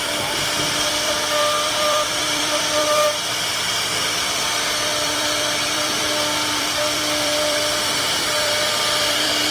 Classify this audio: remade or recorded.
remade